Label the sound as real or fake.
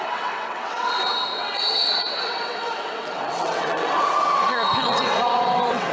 fake